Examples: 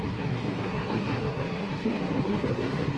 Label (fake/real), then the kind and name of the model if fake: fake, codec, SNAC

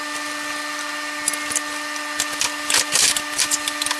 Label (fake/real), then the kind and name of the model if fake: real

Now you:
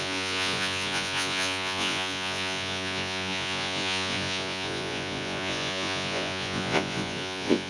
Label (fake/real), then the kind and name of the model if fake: fake, vocoder, Vocos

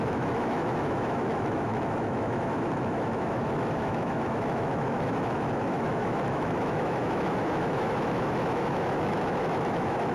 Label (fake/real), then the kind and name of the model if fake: fake, autoencoder, DAC-VAE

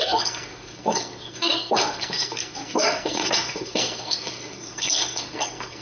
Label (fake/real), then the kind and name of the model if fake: fake, codec, SNAC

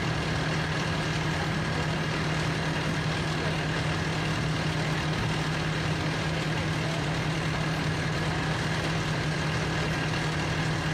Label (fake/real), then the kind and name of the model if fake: real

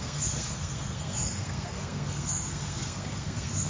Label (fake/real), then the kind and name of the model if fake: fake, codec, SNAC